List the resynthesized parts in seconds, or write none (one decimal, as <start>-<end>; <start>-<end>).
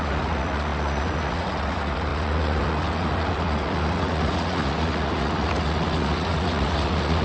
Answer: 0.0-7.2